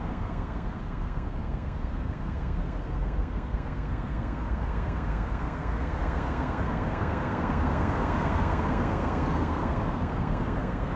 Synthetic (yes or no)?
yes